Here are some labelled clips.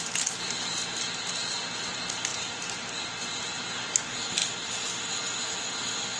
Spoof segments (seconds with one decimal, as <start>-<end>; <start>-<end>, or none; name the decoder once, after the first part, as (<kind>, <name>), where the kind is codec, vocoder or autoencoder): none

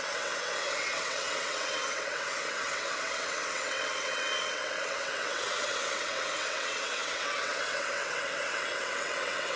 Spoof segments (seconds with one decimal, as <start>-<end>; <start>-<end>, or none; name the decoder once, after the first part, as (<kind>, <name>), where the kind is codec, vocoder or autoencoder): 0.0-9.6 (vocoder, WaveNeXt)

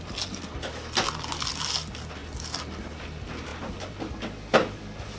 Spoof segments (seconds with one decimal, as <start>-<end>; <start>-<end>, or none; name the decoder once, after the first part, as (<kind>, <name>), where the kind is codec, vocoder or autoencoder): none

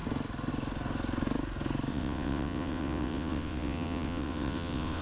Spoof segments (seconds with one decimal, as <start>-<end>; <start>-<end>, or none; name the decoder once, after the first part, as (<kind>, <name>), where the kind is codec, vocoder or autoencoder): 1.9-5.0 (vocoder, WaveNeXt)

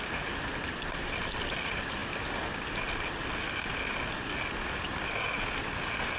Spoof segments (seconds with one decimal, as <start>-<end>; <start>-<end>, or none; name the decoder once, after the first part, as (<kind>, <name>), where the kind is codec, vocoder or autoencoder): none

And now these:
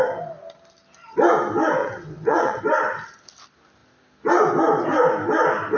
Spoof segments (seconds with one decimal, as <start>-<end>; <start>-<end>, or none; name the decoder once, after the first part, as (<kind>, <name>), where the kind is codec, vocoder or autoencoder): 1.8-2.6 (vocoder, WaveNeXt)

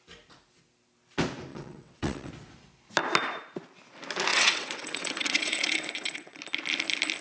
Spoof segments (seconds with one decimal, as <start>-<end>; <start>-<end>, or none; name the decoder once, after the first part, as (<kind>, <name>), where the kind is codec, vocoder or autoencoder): 1.5-2.3 (vocoder, WaveNeXt); 4.3-6.4